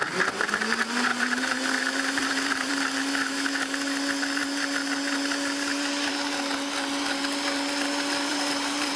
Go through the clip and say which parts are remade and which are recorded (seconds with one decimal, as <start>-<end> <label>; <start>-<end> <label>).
0.0-1.1 recorded; 1.1-2.7 remade; 2.7-8.3 recorded; 8.3-9.0 remade